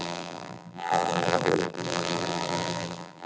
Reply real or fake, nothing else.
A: fake